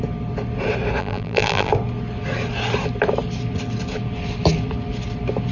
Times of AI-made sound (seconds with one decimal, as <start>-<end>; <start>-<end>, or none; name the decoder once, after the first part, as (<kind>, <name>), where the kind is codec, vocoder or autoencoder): 1.0-1.7 (vocoder, BigVGAN v2)